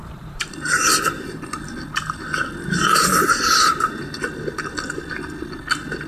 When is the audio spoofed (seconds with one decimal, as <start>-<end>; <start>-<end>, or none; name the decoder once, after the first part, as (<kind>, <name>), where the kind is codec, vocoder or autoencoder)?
0.0-1.5 (vocoder, BigVGAN v2); 3.7-4.2